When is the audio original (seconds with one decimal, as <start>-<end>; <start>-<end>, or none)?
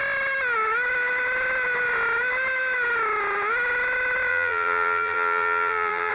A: 0.0-4.3